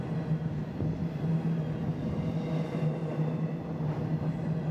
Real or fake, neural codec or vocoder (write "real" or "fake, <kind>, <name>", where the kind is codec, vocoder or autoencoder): real